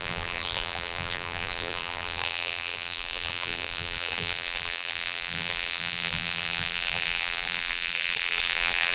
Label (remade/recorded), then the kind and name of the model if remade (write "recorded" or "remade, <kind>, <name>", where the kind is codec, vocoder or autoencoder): remade, vocoder, BigVGAN v2